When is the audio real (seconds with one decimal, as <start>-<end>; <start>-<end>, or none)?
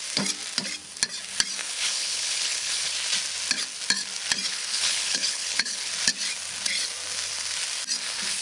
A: 0.0-1.6; 2.9-4.5; 5.9-8.4